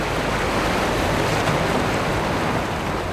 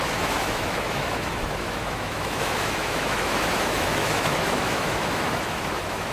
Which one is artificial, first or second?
second